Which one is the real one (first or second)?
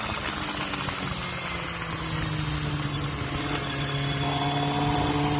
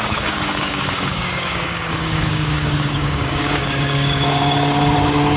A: first